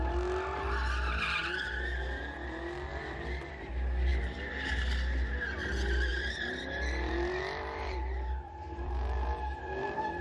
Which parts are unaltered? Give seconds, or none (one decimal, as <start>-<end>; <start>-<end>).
0.0-6.1